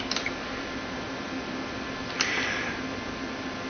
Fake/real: real